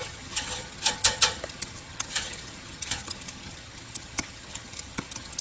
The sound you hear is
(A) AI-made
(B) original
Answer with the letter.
A